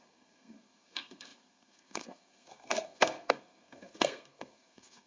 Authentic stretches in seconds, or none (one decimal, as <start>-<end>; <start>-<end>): none